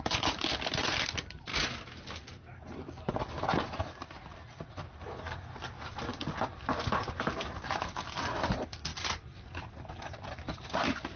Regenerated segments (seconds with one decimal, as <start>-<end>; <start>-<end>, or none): 0.0-1.5; 3.1-11.2